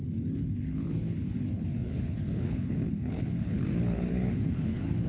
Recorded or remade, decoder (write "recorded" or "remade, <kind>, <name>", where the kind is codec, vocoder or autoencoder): remade, codec, HILCodec